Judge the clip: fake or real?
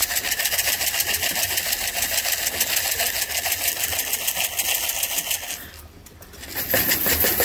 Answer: real